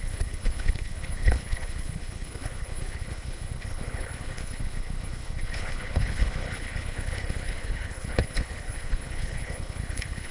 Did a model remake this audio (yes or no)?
yes